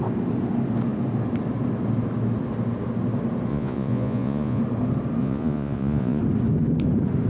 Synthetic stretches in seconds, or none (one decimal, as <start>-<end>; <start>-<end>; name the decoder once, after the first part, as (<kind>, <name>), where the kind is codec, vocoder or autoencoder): 3.5-4.6 (vocoder, Vocos); 5.2-6.2